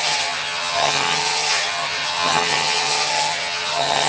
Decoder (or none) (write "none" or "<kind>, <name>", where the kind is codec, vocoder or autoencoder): vocoder, HiFi-GAN